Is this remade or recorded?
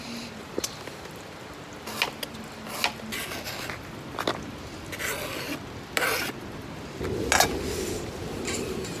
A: recorded